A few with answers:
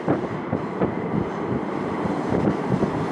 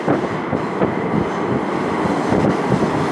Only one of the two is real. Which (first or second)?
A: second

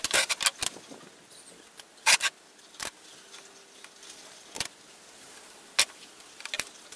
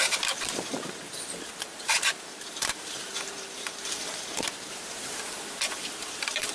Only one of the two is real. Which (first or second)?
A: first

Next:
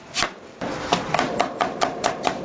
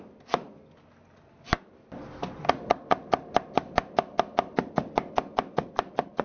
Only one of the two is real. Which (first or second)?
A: second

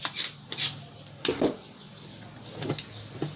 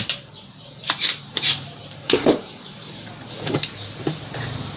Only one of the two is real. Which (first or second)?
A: first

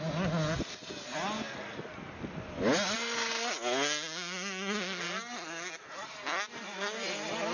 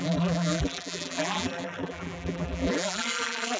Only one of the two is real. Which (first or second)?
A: first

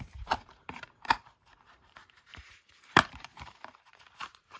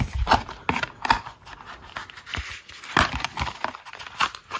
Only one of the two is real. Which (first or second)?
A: second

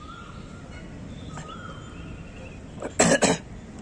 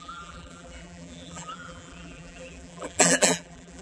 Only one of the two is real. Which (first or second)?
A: first